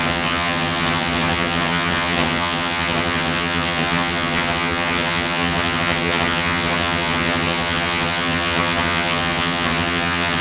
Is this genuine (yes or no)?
no